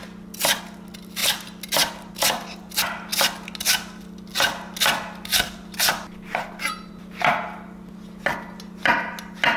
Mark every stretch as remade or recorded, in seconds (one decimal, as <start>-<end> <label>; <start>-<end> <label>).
0.0-9.6 recorded

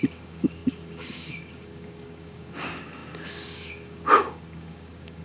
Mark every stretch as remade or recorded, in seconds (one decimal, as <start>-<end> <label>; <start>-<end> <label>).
0.0-5.2 remade